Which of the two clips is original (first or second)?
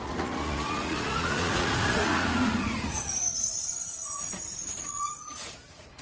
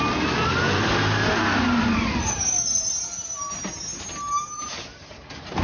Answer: second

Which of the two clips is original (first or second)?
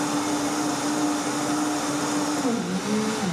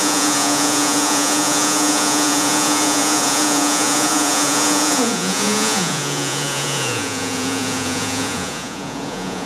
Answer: first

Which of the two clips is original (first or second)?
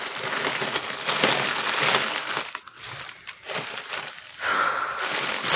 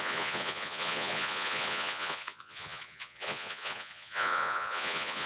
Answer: first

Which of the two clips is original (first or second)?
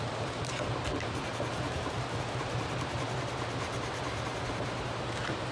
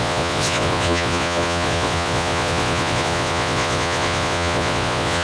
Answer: first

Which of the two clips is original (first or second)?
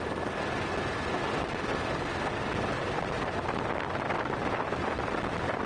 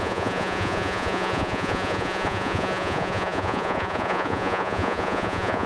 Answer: first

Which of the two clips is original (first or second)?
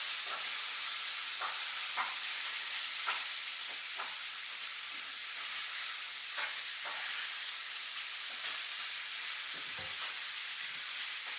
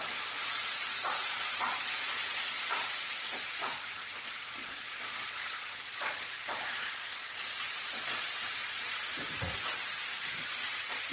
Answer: first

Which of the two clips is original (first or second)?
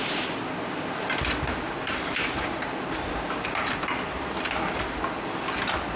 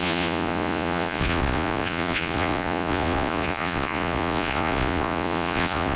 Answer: first